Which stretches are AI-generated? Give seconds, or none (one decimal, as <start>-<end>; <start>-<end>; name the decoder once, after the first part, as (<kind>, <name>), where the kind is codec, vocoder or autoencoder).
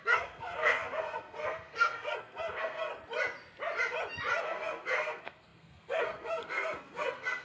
0.0-2.9 (codec, SNAC); 4.4-7.4